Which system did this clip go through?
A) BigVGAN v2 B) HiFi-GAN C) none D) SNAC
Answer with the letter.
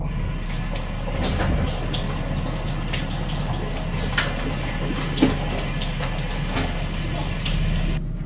C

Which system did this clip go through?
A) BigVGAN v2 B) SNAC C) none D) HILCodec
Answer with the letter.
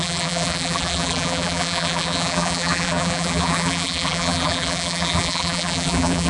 A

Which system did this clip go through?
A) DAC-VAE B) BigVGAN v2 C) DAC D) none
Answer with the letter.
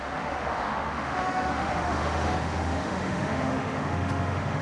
A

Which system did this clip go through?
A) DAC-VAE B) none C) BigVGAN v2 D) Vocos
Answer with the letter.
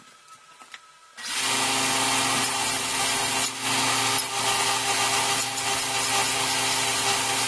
B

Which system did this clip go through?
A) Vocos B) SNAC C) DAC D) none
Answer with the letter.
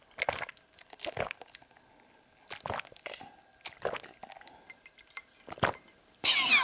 D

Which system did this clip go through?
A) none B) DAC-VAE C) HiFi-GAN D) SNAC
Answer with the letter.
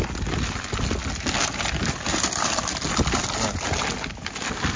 A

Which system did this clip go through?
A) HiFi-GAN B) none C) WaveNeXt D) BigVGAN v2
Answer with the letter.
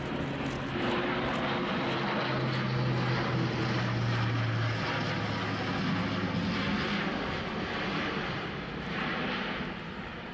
B